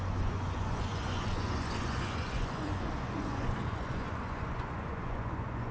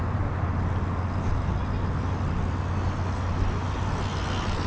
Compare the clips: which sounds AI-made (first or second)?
first